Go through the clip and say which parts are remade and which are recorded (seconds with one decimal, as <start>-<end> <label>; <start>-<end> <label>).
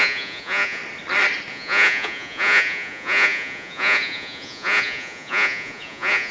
0.0-0.8 remade; 0.8-1.5 recorded; 1.5-6.3 remade